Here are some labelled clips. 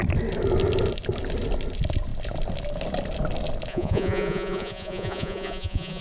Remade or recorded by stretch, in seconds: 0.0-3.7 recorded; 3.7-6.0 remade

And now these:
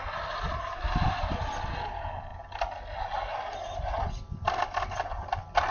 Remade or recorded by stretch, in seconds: 0.0-5.7 recorded

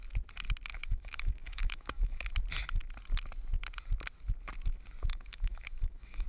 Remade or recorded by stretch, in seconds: 0.0-0.7 recorded; 0.7-2.3 remade; 2.3-5.1 recorded; 5.1-6.3 remade

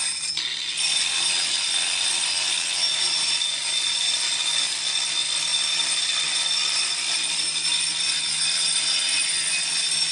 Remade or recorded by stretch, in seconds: 0.0-2.9 recorded; 2.9-3.7 remade; 3.7-10.1 recorded

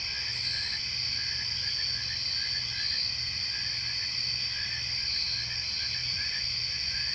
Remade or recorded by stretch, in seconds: 0.0-6.0 recorded; 6.0-7.1 remade

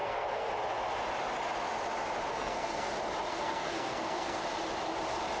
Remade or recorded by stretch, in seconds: 0.0-0.5 remade; 0.5-2.3 recorded; 2.3-2.9 remade; 2.9-3.3 recorded; 3.3-4.4 remade; 4.4-5.4 recorded

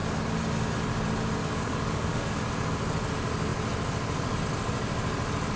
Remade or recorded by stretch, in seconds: 0.0-1.4 recorded; 1.4-2.4 remade; 2.4-5.6 recorded